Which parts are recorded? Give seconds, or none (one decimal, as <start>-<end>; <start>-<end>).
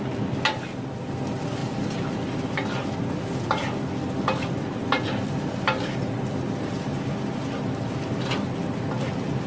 0.0-9.5